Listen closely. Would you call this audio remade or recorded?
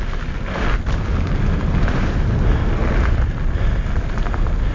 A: recorded